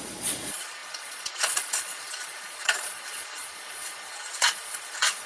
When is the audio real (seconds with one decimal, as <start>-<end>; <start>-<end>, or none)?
none